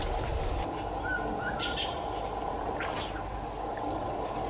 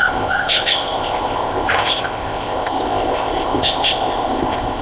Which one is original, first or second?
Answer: first